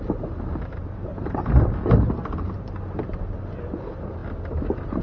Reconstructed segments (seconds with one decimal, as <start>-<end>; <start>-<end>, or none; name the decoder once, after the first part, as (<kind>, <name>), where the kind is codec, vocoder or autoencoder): 1.1-1.6 (vocoder, BigVGAN v2)